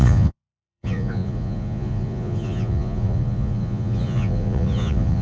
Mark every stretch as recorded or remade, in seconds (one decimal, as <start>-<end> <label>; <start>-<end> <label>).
0.0-5.2 remade